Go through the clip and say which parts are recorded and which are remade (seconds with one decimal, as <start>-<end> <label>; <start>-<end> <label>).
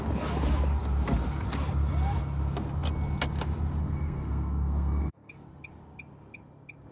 0.0-3.8 recorded; 3.8-5.3 remade; 5.3-6.9 recorded